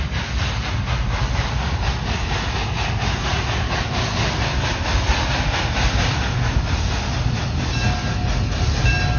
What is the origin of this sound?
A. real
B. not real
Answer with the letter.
A